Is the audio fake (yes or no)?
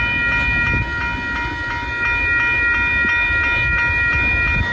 no